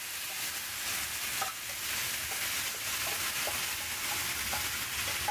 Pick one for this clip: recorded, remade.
recorded